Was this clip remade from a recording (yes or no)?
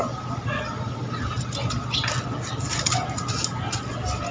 no